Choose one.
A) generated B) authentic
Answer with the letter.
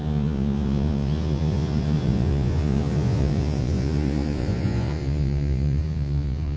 A